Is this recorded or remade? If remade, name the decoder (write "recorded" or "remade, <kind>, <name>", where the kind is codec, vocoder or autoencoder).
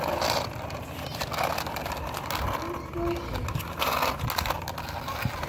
recorded